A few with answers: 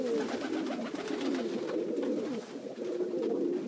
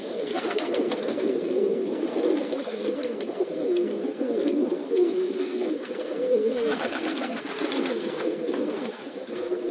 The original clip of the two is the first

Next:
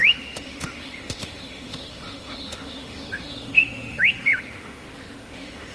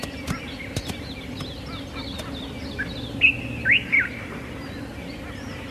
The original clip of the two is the second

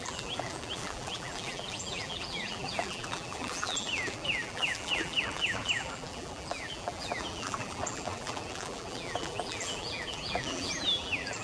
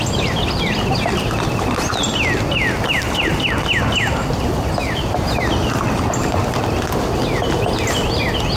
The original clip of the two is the second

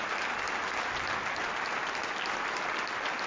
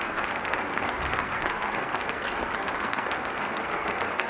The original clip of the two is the first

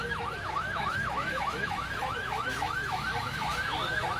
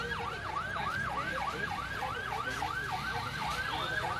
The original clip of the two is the second